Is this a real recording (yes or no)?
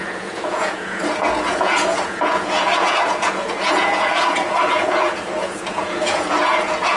no